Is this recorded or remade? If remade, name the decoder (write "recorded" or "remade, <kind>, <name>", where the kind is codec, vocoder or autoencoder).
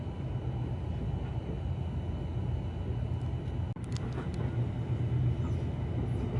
recorded